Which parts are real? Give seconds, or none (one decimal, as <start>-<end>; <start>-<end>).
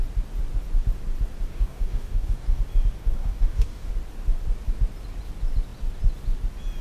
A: 0.0-1.5; 2.6-3.0; 3.9-6.8